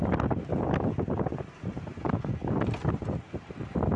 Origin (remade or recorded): recorded